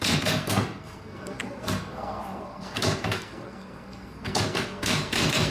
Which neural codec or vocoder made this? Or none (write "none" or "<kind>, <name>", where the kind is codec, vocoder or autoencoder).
codec, SNAC